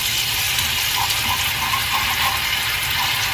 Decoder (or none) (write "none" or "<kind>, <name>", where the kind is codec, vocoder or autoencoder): none